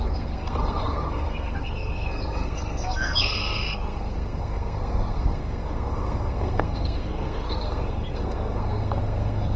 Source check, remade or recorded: remade